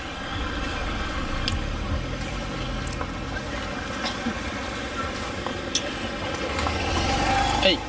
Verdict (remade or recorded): recorded